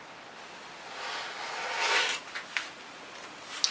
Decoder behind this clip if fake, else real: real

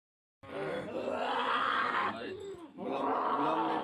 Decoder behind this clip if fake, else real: fake, vocoder, BigVGAN v2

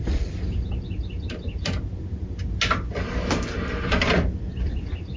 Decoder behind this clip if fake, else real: real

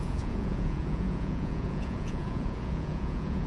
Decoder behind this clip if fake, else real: fake, vocoder, Vocos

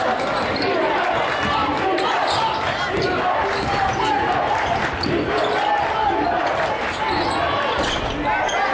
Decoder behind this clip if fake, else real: real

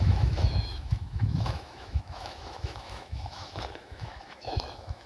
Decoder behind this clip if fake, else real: fake, autoencoder, DAC-VAE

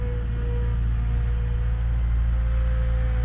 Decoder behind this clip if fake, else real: real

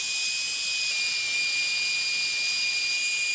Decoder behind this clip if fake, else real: real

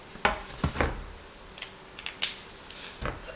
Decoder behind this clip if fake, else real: real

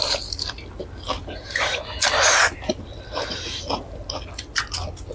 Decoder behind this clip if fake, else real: real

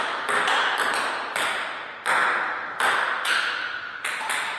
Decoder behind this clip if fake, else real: real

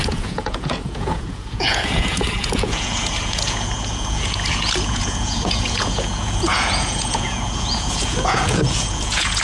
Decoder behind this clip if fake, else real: fake, vocoder, Vocos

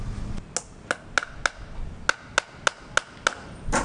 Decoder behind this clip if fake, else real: real